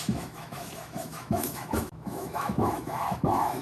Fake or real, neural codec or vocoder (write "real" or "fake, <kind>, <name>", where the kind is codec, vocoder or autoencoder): fake, autoencoder, DAC-VAE